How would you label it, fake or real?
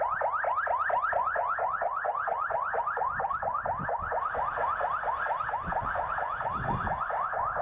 real